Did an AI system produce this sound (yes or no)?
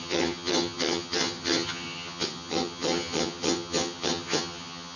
yes